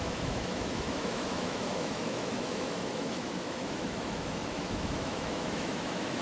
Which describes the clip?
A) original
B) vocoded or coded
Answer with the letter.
B